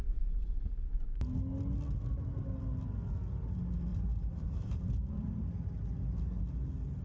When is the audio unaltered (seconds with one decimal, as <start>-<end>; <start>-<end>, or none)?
0.0-3.9; 5.4-7.0